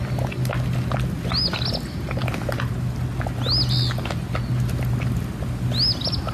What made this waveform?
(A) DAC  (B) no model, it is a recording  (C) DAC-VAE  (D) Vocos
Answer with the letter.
B